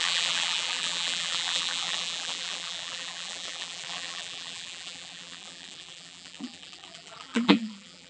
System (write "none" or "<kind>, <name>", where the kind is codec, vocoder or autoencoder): vocoder, BigVGAN v2